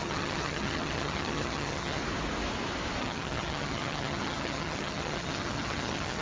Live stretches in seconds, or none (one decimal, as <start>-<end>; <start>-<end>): 2.0-3.0